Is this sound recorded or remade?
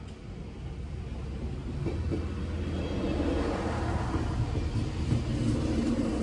recorded